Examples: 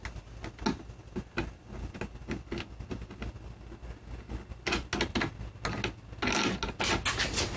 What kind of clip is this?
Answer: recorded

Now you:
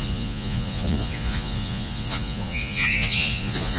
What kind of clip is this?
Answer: remade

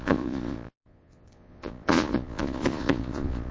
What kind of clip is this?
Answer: remade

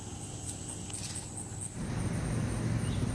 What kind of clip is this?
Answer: recorded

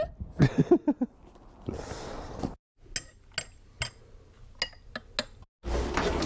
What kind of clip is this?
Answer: recorded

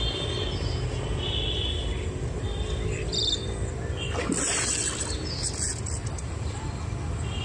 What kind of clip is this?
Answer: recorded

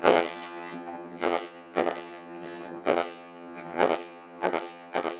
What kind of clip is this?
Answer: remade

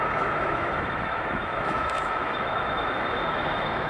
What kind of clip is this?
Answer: remade